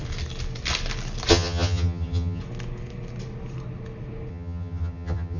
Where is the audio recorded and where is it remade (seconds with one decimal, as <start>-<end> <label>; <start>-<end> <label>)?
0.0-1.3 recorded; 1.3-2.4 remade; 2.4-4.3 recorded; 4.3-5.4 remade